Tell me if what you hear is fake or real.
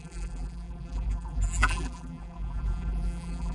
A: fake